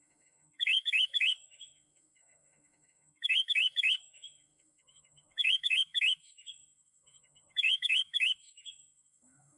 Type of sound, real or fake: fake